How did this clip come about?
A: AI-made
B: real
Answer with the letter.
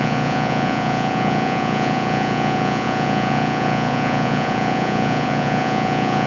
A